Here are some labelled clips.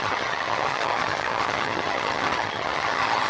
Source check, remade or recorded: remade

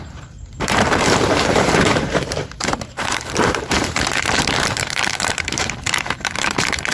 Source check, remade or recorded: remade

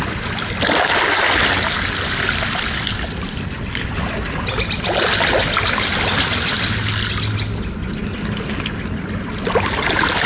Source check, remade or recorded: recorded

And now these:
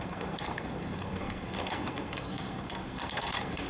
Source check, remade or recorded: remade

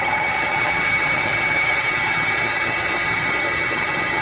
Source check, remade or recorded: remade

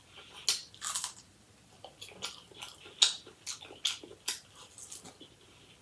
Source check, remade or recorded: recorded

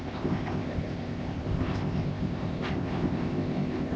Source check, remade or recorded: remade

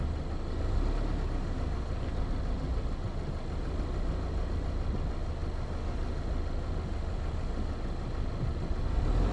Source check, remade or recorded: recorded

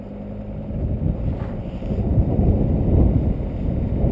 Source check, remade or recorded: recorded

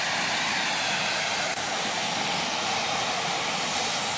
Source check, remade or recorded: remade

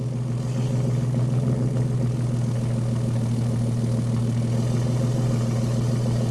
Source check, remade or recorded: recorded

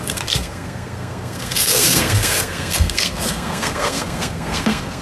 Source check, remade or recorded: remade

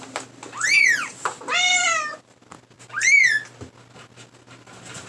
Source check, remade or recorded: recorded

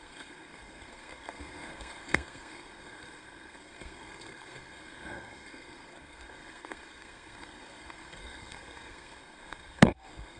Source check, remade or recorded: remade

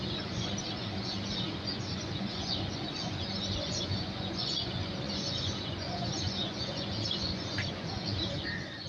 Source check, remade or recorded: remade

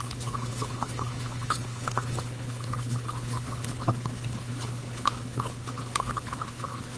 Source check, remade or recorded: remade